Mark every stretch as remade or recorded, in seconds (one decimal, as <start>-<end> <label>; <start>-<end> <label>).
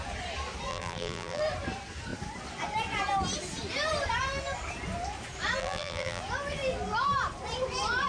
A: 0.0-0.7 recorded; 0.7-1.4 remade; 1.4-5.6 recorded; 5.6-6.2 remade; 6.2-8.1 recorded